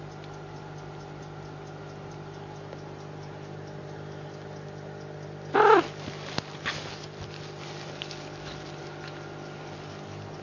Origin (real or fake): real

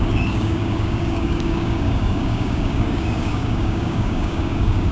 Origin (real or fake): fake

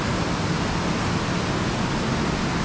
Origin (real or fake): real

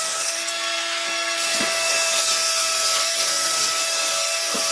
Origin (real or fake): fake